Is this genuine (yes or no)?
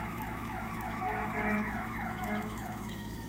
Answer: no